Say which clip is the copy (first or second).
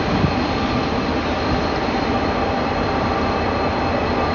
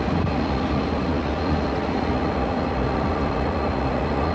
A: second